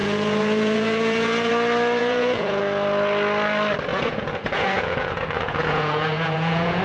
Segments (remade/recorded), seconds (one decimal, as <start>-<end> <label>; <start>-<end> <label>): 0.0-1.5 remade; 1.5-2.0 recorded; 2.0-2.6 remade; 2.6-3.9 recorded; 3.9-6.8 remade